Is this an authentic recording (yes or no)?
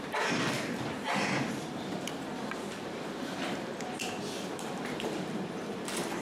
no